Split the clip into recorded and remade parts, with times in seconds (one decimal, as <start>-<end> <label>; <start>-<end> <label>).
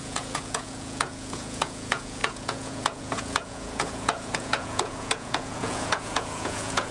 0.0-6.9 remade